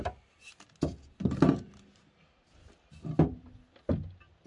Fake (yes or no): no